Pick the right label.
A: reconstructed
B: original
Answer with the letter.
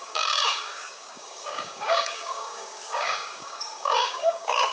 A